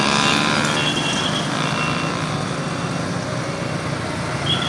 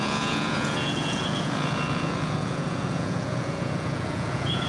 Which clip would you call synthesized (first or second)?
second